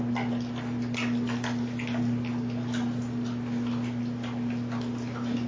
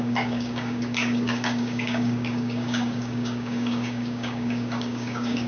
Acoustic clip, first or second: first